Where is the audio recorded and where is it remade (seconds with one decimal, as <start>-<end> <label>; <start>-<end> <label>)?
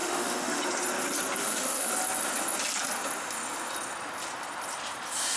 0.0-0.6 remade; 0.6-1.4 recorded; 1.4-1.9 remade; 1.9-5.4 recorded